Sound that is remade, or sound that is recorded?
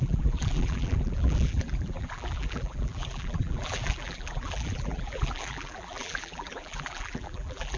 remade